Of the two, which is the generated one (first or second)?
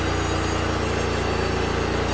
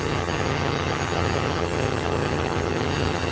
second